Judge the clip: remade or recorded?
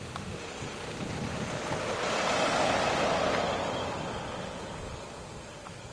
recorded